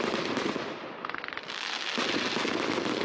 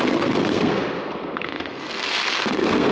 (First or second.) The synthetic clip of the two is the second